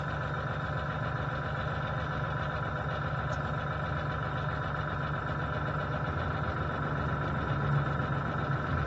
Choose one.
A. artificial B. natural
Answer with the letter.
B